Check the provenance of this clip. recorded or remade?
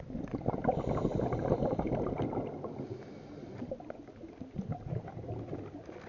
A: recorded